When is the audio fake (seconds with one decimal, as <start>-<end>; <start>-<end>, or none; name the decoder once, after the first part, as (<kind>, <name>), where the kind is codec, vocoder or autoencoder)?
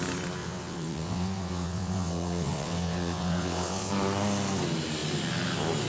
0.4-3.9 (vocoder, WaveNeXt)